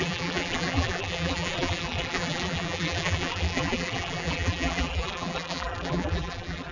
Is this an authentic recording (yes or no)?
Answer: no